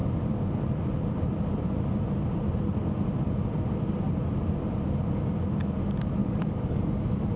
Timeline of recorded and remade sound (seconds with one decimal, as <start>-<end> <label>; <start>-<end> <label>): 0.0-6.2 recorded; 6.2-6.9 remade; 6.9-7.4 recorded